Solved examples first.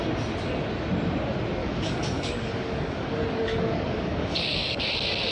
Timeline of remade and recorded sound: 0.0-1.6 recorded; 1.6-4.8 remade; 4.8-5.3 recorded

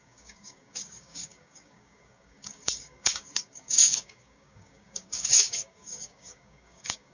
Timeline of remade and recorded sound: 0.0-7.1 remade